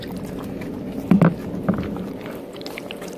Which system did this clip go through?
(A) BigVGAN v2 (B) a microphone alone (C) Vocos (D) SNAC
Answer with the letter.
B